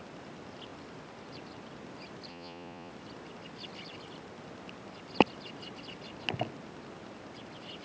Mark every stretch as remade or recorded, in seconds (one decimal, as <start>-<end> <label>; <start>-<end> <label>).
0.0-2.3 recorded; 2.3-2.9 remade; 2.9-7.8 recorded